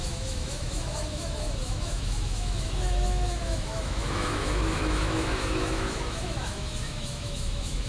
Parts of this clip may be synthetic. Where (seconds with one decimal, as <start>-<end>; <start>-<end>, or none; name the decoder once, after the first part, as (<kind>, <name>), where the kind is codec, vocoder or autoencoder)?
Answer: 0.0-7.9 (autoencoder, DAC-VAE)